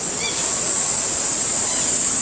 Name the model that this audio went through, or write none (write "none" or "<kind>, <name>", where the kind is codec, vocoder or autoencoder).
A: none